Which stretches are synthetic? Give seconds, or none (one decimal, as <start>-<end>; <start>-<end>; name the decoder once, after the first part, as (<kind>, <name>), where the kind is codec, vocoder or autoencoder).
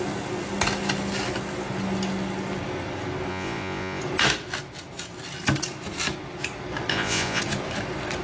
3.3-4.0 (vocoder, Vocos); 6.9-7.4